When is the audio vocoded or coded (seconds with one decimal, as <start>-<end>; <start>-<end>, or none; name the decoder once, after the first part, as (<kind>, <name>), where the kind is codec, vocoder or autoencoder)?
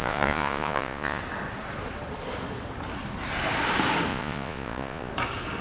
0.0-1.2 (vocoder, Vocos); 4.1-5.1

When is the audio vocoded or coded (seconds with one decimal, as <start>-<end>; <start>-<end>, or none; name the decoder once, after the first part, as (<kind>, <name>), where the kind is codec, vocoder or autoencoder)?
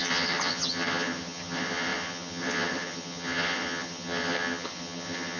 0.0-5.4 (vocoder, HiFi-GAN)